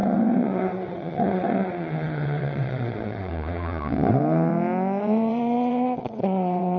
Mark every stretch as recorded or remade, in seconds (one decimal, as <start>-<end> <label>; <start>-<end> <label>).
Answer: 0.0-4.5 remade; 4.5-5.0 recorded; 5.0-6.8 remade